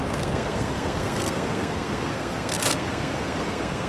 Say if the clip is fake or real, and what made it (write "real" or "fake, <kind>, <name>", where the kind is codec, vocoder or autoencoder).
fake, codec, SNAC